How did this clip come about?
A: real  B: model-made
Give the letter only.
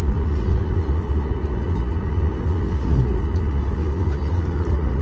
B